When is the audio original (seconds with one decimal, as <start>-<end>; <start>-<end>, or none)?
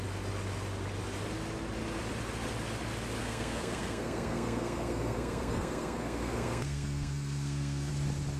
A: 0.0-3.2; 7.9-8.4